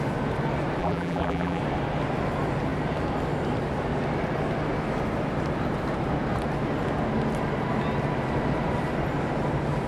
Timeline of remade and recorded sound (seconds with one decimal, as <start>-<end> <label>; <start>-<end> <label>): 0.0-0.8 recorded; 0.8-1.6 remade; 1.6-9.9 recorded

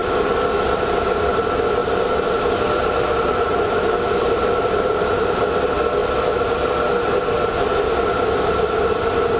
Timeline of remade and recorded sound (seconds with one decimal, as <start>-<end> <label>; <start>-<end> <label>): 0.0-1.8 recorded; 1.8-2.4 remade; 2.4-2.8 recorded; 2.8-5.4 remade; 5.4-9.4 recorded

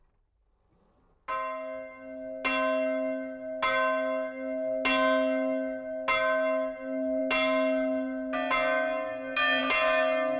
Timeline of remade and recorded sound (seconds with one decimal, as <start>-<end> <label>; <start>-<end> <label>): 0.0-10.4 recorded

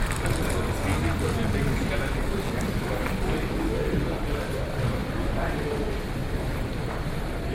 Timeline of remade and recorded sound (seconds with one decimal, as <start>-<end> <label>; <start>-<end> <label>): 0.0-5.0 recorded; 5.0-5.8 remade; 5.8-6.2 recorded; 6.2-6.9 remade; 6.9-7.5 recorded